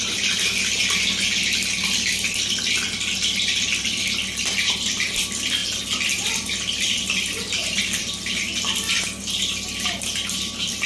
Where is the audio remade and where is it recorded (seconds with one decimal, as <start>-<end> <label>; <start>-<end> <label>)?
0.0-10.9 recorded